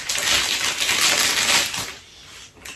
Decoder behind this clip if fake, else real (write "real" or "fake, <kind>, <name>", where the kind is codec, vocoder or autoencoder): real